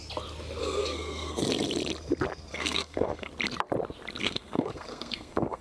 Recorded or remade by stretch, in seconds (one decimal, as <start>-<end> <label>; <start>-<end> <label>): 0.0-0.6 recorded; 0.6-1.4 remade; 1.4-2.5 recorded; 2.5-3.3 remade; 3.3-4.2 recorded; 4.2-5.6 remade